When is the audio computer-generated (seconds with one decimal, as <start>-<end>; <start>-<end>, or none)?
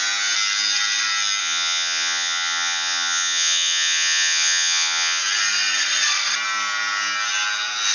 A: 1.4-5.2